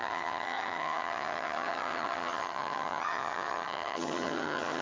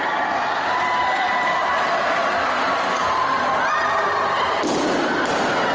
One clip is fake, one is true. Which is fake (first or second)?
first